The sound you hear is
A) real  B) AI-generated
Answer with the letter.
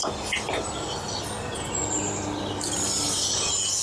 A